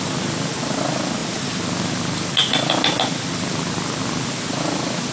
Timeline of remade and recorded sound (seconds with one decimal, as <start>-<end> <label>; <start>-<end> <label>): 0.0-5.1 recorded